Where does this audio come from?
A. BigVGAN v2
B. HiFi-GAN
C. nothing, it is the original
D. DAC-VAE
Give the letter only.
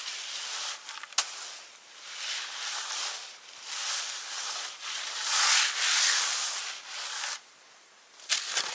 C